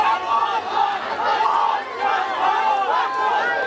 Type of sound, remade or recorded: recorded